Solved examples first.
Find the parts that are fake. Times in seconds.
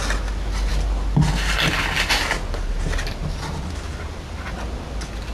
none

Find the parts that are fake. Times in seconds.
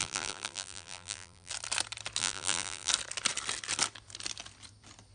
0.0-1.5; 2.2-2.9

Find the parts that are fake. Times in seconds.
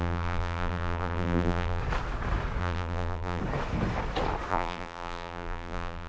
0.0-1.8; 2.6-3.4; 4.5-6.1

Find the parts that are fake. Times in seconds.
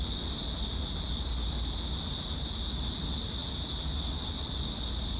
none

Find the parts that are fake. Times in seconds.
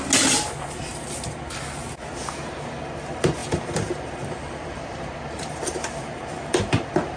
3.4-7.2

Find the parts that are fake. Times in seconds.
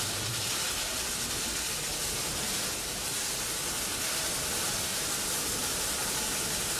5.6-6.8